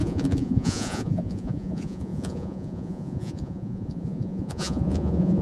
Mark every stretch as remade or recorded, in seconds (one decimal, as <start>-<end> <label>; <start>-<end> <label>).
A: 0.0-5.4 remade